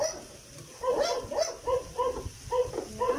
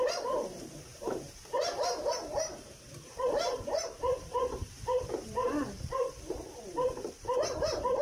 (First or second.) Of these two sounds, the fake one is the second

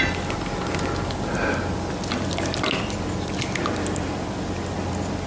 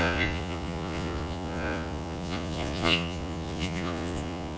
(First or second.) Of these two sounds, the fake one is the second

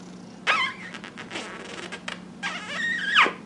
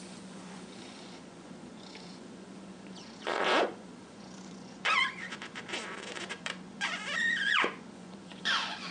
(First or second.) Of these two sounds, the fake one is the second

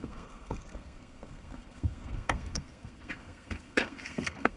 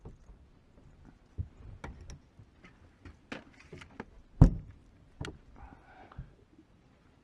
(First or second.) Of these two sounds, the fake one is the first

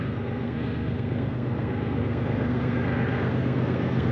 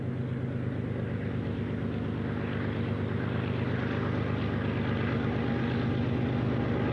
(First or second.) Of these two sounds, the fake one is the first